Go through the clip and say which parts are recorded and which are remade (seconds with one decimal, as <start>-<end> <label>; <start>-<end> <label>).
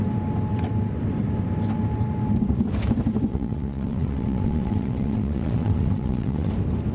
0.0-3.3 recorded; 3.3-6.5 remade; 6.5-6.9 recorded